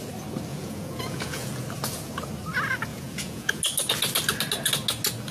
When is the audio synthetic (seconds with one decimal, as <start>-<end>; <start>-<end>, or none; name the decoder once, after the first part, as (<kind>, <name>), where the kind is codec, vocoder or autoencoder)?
0.5-1.6 (vocoder, Vocos); 2.9-3.6